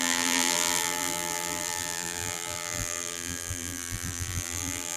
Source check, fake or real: fake